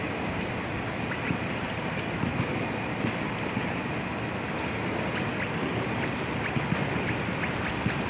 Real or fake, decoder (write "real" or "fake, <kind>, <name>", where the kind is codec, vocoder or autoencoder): real